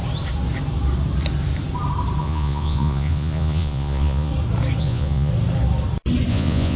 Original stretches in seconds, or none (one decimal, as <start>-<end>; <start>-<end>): 0.0-2.2; 4.3-4.8; 5.3-6.3